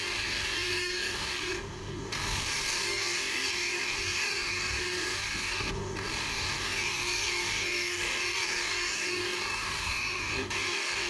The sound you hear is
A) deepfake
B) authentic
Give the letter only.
A